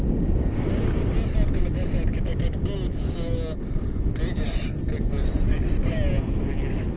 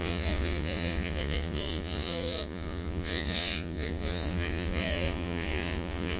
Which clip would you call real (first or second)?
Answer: first